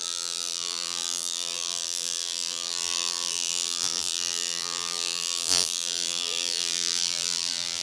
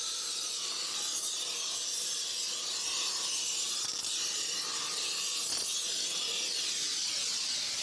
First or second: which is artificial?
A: first